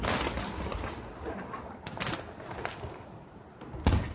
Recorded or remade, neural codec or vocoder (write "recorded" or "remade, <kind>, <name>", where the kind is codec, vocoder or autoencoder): recorded